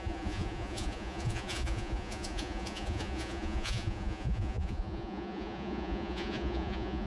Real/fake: fake